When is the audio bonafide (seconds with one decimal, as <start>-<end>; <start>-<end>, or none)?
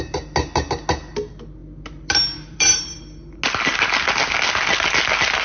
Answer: 0.0-1.6; 3.4-5.4